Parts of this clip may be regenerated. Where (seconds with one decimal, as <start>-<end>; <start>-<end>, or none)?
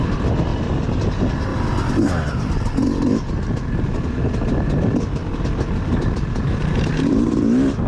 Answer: 5.2-6.8